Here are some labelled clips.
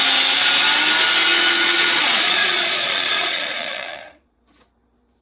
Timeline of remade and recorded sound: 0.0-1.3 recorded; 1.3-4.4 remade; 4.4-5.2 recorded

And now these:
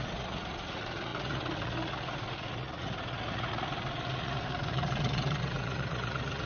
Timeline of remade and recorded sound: 0.0-6.5 remade

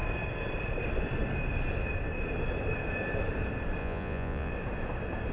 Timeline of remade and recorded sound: 0.0-3.8 recorded; 3.8-4.5 remade; 4.5-5.3 recorded

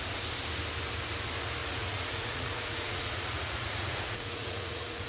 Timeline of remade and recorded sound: 0.0-1.6 recorded; 1.6-5.1 remade

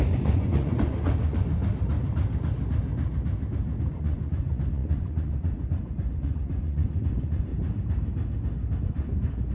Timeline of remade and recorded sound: 0.0-1.6 remade; 1.6-3.9 recorded; 3.9-7.5 remade; 7.5-8.8 recorded; 8.8-9.5 remade

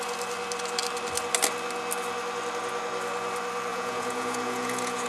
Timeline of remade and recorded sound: 0.0-3.7 recorded; 3.7-5.1 remade

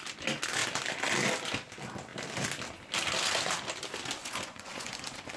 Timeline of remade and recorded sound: 0.0-4.2 recorded; 4.2-5.0 remade; 5.0-5.4 recorded

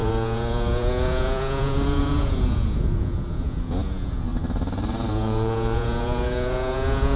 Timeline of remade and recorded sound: 0.0-4.3 remade; 4.3-5.1 recorded; 5.1-7.2 remade